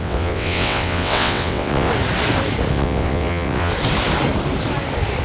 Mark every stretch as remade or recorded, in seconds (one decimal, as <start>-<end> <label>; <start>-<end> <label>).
0.0-1.9 remade; 1.9-2.7 recorded; 2.7-3.7 remade; 3.7-5.2 recorded